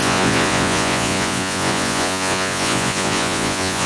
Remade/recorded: remade